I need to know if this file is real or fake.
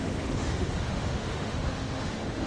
fake